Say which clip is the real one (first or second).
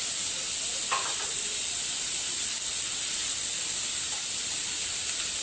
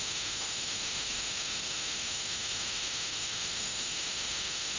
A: first